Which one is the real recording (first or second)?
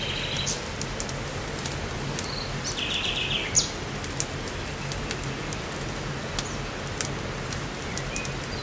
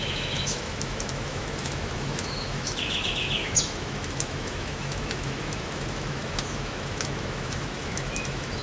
first